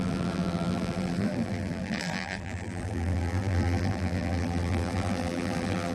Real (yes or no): no